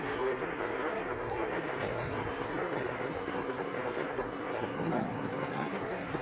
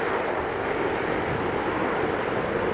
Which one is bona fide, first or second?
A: second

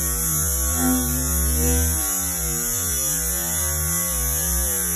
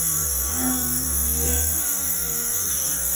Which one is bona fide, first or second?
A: first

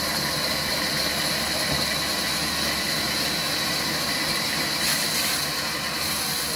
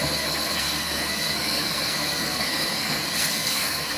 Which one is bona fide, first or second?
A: first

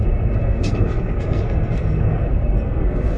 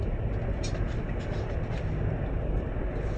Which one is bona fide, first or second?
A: second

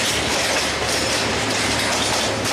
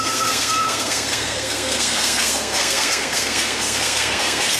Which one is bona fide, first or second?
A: first